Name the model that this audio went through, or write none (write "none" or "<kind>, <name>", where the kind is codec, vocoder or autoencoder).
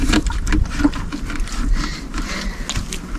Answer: none